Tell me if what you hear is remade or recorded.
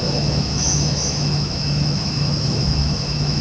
remade